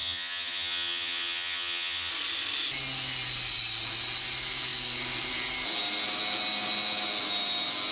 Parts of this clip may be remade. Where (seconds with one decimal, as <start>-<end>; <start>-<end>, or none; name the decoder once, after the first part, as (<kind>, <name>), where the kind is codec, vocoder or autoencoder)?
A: 0.0-2.1 (vocoder, HiFi-GAN)